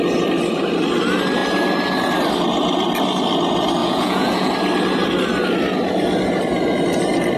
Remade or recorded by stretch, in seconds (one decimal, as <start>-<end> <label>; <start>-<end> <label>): 0.0-3.8 recorded; 3.8-4.5 remade; 4.5-7.4 recorded